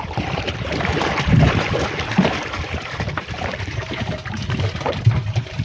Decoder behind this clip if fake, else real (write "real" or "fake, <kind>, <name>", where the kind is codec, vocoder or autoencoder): fake, vocoder, BigVGAN v2